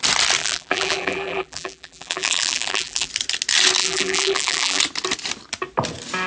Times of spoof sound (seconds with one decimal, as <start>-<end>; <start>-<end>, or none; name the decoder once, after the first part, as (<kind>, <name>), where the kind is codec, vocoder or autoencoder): 0.4-3.1 (vocoder, BigVGAN v2); 3.8-4.8